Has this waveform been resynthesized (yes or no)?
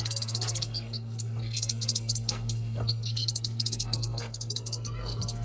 yes